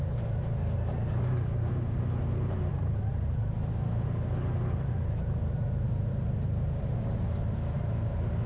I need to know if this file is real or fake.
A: fake